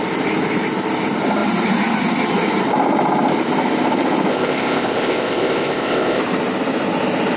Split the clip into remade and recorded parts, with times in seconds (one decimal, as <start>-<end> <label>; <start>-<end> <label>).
0.0-4.3 recorded; 4.3-6.2 remade; 6.2-7.4 recorded